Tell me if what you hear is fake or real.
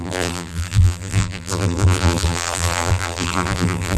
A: fake